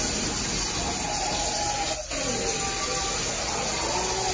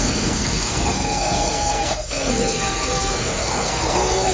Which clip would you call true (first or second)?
first